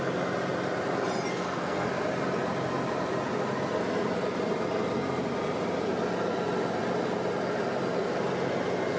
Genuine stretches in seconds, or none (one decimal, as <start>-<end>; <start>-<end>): 0.0-1.3; 1.9-9.0